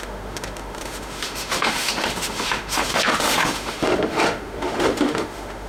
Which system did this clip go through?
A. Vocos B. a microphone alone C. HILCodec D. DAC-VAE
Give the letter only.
D